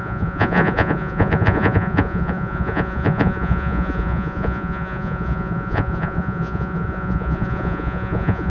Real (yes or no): no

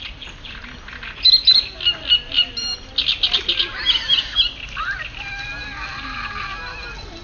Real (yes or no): yes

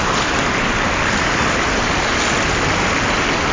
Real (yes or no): yes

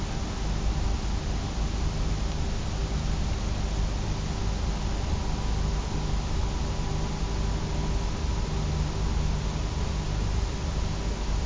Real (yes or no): yes